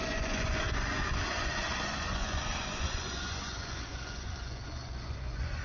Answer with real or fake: fake